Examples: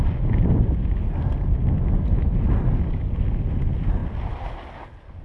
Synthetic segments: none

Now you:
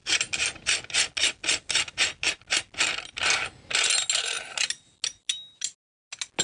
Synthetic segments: none

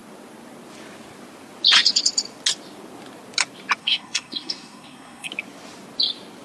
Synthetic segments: 3.8-5.3 (codec, SNAC)